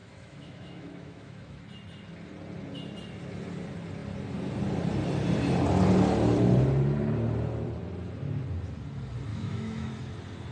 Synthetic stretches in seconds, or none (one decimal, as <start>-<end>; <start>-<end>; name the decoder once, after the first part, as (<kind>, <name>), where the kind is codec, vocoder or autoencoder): 0.0-1.6 (autoencoder, DAC-VAE); 9.3-9.9